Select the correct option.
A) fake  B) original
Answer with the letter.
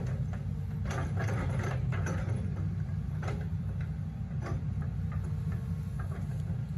B